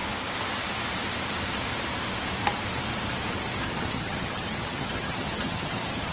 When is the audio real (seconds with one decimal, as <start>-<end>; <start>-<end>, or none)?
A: 0.0-3.7